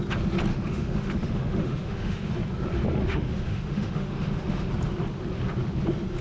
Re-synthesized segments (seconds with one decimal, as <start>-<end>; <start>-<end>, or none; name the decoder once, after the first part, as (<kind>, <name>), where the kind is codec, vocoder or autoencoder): 0.5-2.3 (autoencoder, DAC-VAE); 3.0-4.7